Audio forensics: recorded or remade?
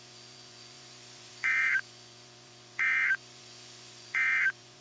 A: remade